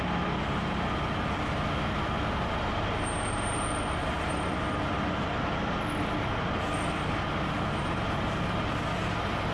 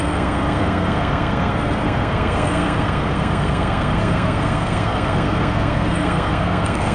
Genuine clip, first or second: first